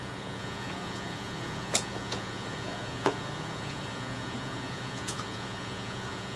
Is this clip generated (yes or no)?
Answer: yes